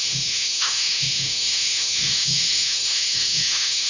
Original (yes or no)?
no